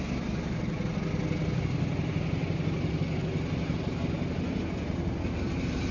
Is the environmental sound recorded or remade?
recorded